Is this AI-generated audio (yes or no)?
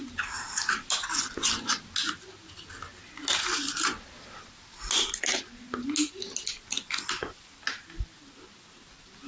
no